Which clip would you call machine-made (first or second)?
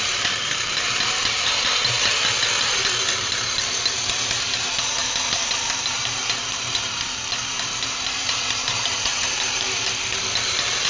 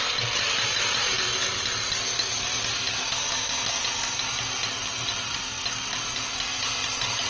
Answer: first